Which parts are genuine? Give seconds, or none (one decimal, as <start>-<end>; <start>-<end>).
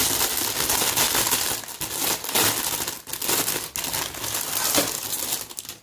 0.0-5.8